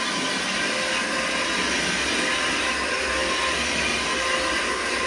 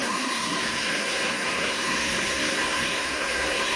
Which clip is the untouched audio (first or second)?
first